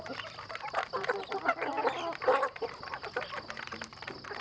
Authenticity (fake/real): fake